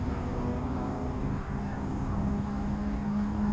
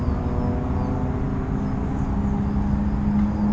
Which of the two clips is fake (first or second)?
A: first